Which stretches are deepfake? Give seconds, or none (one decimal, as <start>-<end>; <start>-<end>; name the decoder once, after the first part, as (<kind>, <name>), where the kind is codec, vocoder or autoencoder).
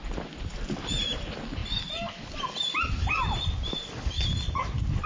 none